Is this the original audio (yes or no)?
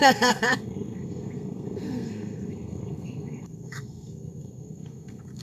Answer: no